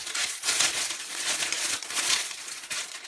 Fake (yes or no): yes